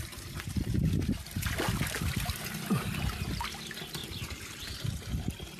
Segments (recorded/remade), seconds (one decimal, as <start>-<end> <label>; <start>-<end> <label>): 0.0-4.0 recorded; 4.0-5.6 remade